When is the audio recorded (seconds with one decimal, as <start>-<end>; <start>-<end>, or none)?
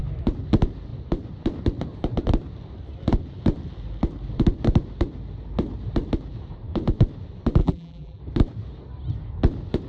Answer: 0.0-7.6; 8.2-9.9